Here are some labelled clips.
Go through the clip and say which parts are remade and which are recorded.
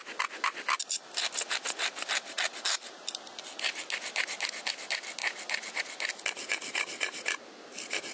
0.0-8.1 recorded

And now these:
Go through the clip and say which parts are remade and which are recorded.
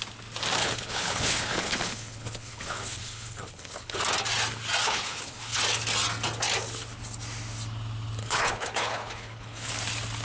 0.0-0.6 recorded; 0.6-4.0 remade; 4.0-4.8 recorded; 4.8-5.6 remade; 5.6-8.2 recorded; 8.2-9.7 remade; 9.7-10.2 recorded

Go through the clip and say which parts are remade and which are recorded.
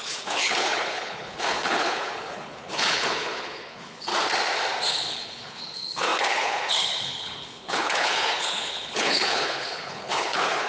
0.0-4.1 remade; 4.1-4.9 recorded; 4.9-10.7 remade